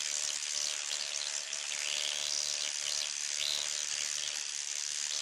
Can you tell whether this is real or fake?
real